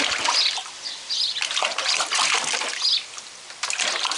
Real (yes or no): yes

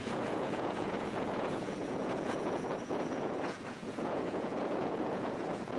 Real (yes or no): no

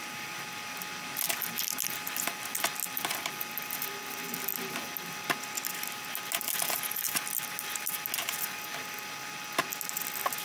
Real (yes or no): yes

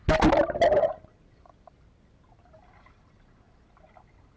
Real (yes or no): yes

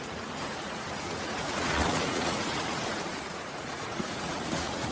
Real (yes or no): no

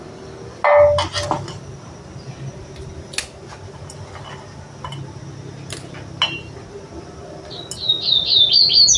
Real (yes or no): yes